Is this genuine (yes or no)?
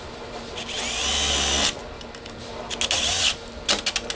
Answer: yes